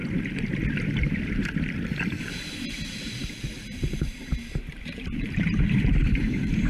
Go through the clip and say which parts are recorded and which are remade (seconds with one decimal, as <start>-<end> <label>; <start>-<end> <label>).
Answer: 0.0-2.2 recorded; 2.2-6.7 remade